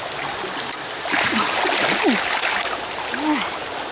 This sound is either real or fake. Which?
real